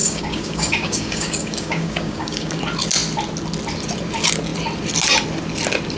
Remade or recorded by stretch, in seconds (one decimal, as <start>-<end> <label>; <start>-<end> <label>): 0.0-2.6 remade; 2.6-6.0 recorded